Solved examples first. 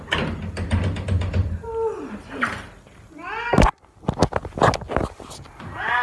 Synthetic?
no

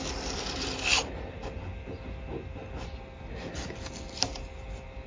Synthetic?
no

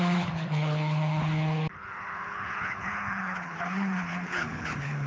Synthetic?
yes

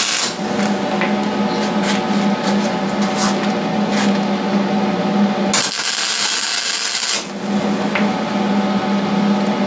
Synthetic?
no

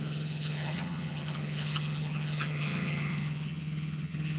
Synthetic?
yes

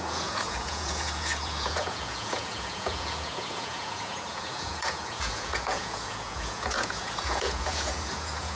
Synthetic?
yes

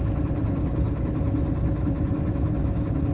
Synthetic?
no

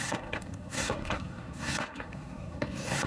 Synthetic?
yes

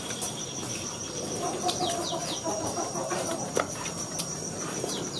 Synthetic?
yes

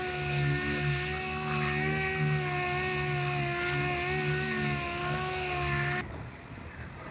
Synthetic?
no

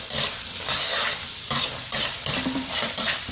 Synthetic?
yes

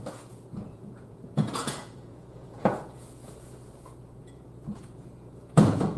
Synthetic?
yes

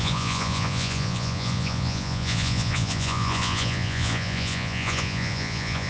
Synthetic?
yes